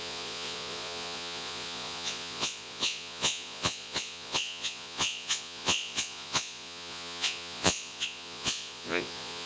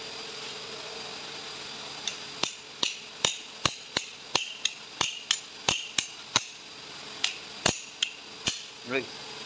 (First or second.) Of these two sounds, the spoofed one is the first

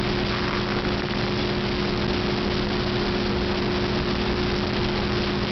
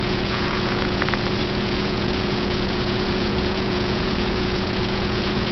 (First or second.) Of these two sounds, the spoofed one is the second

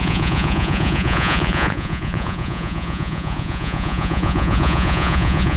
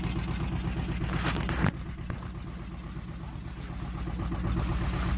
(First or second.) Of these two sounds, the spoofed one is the first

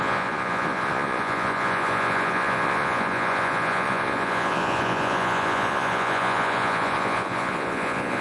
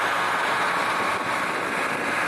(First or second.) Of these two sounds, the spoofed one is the first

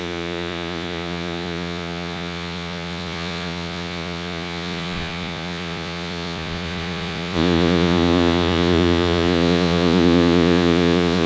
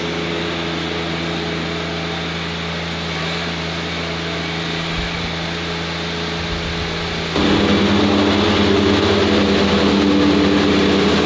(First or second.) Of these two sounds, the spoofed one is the first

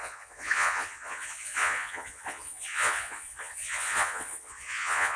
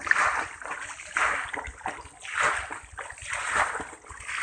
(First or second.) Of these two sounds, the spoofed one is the first